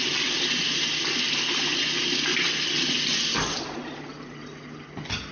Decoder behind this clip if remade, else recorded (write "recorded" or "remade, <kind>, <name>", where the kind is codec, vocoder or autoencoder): recorded